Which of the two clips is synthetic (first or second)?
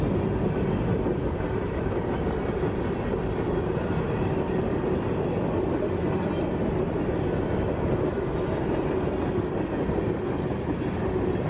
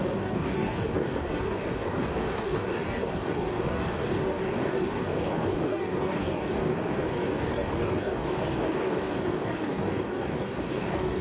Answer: second